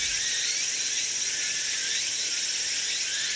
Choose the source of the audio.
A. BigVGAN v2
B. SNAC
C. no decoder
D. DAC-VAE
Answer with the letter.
C